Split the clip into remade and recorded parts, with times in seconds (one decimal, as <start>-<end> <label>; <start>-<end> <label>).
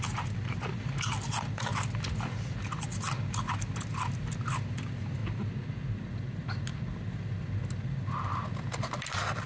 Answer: 0.0-9.5 recorded